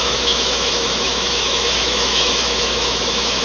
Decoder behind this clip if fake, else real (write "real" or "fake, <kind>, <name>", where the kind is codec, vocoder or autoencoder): fake, autoencoder, DAC-VAE